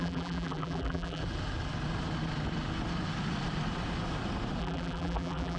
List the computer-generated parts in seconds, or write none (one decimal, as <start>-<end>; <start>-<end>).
0.0-1.2; 4.6-5.6